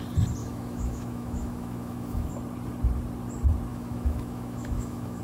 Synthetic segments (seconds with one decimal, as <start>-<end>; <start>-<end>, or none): 0.4-2.3; 3.7-5.2